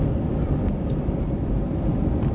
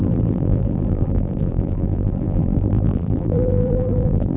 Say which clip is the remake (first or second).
second